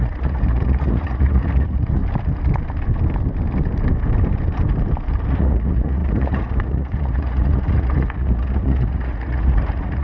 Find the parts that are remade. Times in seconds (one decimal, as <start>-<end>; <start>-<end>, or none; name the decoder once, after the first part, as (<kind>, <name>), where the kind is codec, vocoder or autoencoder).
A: 0.0-2.0 (vocoder, Vocos); 5.3-10.0